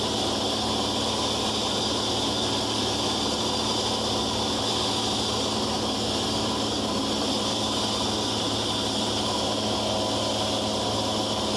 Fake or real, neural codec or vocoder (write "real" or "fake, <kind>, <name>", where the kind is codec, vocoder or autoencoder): real